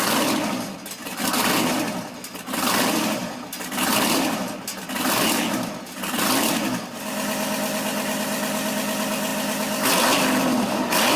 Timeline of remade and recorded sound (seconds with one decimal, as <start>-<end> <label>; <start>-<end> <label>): 0.0-11.2 recorded

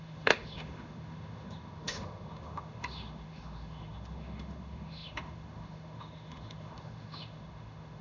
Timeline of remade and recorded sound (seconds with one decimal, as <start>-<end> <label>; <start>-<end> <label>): 0.0-8.0 remade

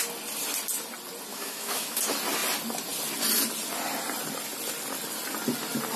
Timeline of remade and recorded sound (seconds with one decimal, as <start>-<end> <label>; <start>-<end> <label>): 0.0-1.3 recorded; 1.3-2.0 remade; 2.0-6.0 recorded

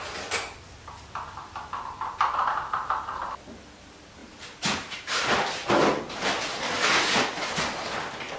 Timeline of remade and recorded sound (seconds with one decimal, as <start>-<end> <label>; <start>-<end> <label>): 0.0-8.4 recorded

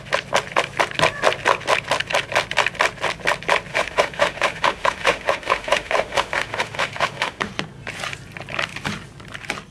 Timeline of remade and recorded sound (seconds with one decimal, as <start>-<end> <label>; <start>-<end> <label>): 0.0-3.7 recorded; 3.7-7.5 remade; 7.5-9.7 recorded

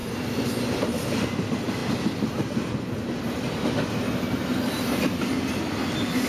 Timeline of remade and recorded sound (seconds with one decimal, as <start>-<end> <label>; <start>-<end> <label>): 0.0-6.3 recorded

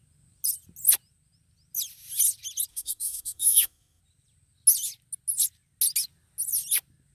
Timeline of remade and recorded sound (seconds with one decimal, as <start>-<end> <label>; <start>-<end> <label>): 0.0-2.7 recorded; 2.7-4.0 remade; 4.0-7.1 recorded